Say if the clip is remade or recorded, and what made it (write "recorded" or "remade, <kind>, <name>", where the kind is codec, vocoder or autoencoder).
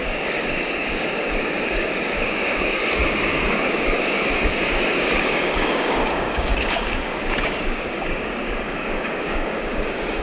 remade, codec, DAC